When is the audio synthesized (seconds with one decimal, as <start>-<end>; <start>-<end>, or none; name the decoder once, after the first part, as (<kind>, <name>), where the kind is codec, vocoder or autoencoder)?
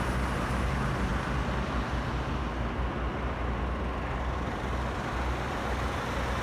none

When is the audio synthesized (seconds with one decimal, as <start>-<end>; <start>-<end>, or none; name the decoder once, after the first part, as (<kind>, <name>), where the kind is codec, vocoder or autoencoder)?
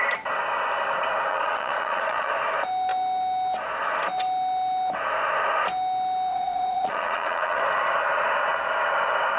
1.3-2.3 (vocoder, Vocos); 6.3-7.6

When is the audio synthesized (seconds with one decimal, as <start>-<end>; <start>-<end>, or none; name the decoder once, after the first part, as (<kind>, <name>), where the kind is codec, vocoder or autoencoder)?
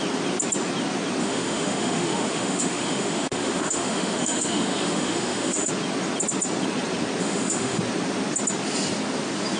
1.2-5.7 (autoencoder, DAC-VAE); 7.2-7.8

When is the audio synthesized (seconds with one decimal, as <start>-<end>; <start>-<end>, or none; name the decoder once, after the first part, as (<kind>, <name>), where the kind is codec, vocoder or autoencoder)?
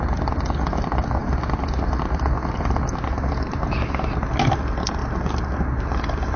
none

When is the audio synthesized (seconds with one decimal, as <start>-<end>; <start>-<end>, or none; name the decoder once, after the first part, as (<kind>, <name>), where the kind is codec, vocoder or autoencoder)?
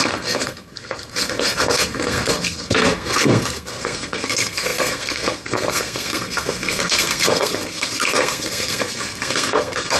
0.0-10.0 (codec, SNAC)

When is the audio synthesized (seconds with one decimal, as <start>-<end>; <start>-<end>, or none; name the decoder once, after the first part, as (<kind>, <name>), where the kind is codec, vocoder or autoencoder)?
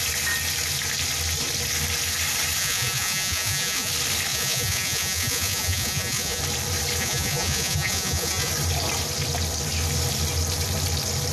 2.6-3.9 (vocoder, Vocos); 4.3-6.4; 7.0-8.5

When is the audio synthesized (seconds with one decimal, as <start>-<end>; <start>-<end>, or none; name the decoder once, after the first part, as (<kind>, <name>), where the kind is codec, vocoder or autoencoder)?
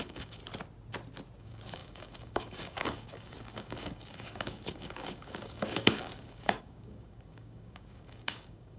0.0-0.4 (codec, DAC); 1.4-8.8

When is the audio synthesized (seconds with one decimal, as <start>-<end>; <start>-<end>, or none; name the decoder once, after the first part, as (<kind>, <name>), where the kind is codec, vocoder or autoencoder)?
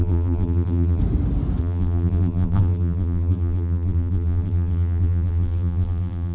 0.0-1.0 (vocoder, BigVGAN v2); 1.6-6.3